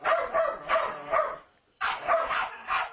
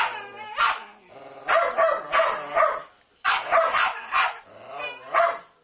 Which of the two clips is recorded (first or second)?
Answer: second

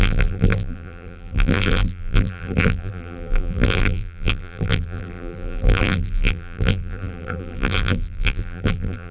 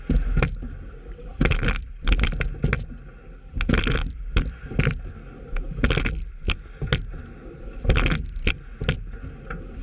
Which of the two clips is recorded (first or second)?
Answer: second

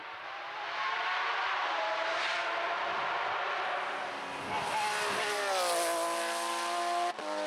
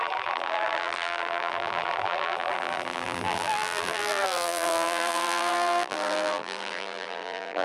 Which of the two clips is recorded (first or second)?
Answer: first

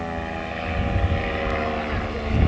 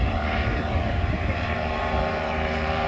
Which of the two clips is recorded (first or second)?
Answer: first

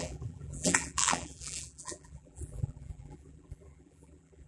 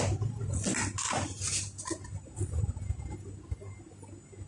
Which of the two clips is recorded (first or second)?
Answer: second